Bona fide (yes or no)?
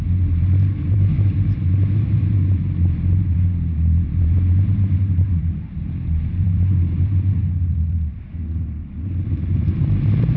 no